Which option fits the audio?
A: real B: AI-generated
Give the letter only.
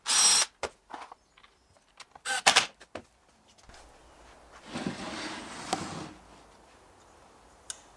A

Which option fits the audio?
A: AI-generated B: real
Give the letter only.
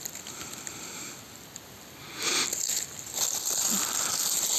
B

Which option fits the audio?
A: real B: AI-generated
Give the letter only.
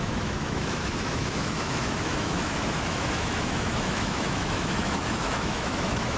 B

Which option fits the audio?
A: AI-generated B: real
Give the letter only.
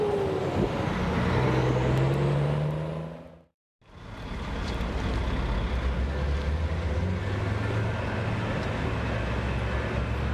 B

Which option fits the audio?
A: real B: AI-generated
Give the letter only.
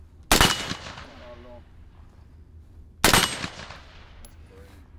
A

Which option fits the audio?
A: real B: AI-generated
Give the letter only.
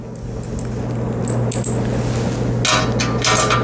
A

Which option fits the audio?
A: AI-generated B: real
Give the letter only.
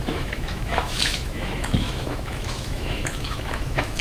A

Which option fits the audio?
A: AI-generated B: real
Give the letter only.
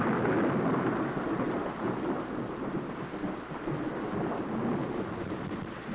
B